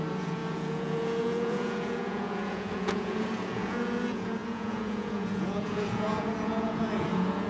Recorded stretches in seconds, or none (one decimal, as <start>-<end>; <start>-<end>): none